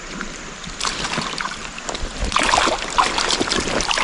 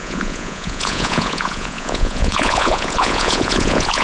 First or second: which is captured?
first